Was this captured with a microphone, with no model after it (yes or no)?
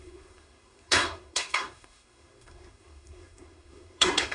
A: no